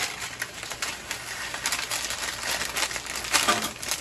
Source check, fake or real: real